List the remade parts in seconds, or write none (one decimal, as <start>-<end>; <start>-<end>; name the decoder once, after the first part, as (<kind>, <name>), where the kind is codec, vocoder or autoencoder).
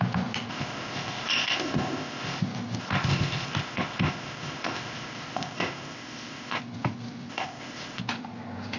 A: 0.5-2.4 (codec, ZipCodec); 2.8-6.6; 7.3-8.0